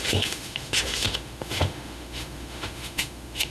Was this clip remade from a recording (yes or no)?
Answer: yes